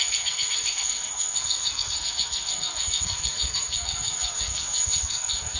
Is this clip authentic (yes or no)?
no